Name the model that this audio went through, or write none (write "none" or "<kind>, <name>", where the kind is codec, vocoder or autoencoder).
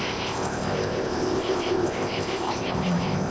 codec, ZipCodec